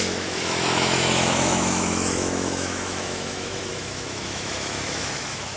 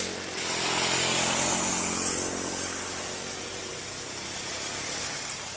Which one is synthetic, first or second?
first